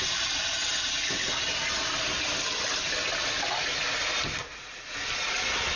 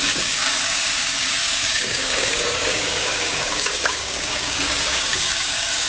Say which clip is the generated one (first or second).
second